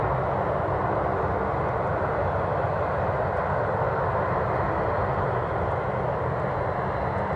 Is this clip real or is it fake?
real